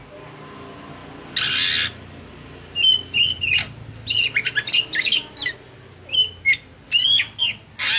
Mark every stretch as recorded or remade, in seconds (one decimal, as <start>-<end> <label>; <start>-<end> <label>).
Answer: 0.0-8.0 recorded